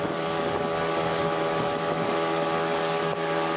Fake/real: fake